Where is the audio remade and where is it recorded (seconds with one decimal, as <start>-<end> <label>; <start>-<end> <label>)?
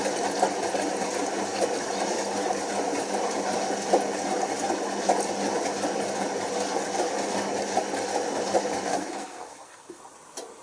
0.0-8.9 recorded; 8.9-10.0 remade; 10.0-10.6 recorded